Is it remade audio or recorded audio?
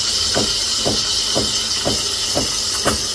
recorded